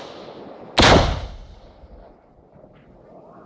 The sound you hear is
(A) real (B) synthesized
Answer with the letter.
A